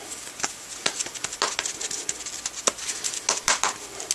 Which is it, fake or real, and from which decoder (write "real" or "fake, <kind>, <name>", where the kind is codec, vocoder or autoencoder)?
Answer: real